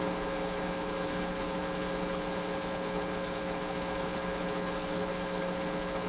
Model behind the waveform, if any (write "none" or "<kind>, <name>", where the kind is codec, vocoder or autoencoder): codec, HILCodec